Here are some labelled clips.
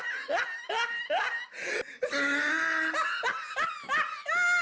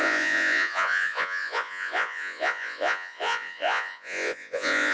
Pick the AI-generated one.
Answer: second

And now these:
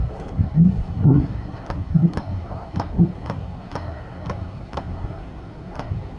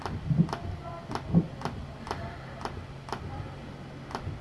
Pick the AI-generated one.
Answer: first